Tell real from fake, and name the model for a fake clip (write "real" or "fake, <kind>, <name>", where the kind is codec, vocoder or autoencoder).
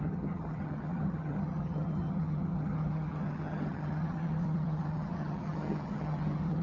fake, vocoder, HiFi-GAN